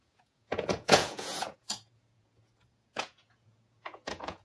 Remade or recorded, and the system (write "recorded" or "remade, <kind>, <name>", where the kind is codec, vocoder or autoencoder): remade, vocoder, Vocos